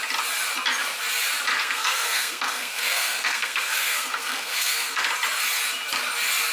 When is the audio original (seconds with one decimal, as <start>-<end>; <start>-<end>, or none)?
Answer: 0.0-1.5; 5.1-6.5